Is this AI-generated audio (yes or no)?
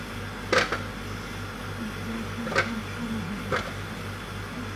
no